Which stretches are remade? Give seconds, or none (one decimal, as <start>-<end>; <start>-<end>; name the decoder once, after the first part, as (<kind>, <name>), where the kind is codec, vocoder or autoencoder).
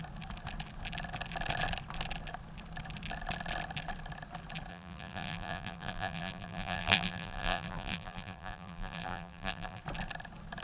4.7-9.8 (vocoder, BigVGAN v2)